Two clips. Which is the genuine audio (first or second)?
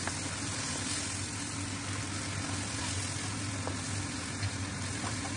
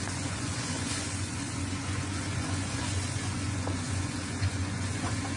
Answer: first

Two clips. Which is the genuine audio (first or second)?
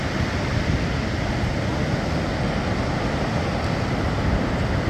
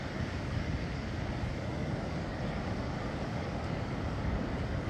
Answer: first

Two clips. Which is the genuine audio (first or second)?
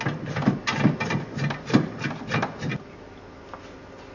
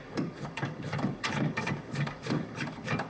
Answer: first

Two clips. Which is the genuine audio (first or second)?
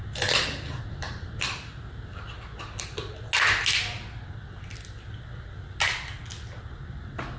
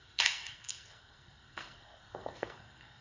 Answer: first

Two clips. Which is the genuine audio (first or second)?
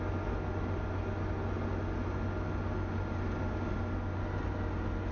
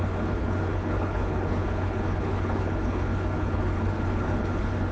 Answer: first